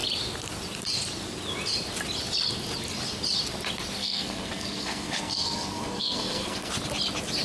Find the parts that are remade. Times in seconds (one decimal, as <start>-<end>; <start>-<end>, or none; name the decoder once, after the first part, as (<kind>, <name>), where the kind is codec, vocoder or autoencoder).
4.0-6.7 (codec, SNAC)